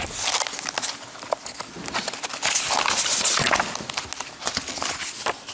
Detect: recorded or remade recorded